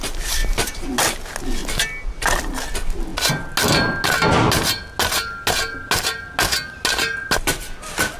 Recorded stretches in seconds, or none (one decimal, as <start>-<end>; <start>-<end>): 0.0-0.4; 1.0-8.2